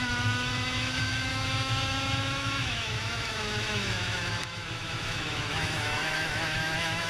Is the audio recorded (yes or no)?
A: no